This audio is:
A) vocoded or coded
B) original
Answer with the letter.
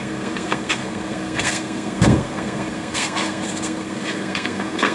A